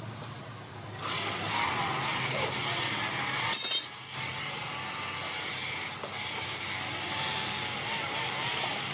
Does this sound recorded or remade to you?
recorded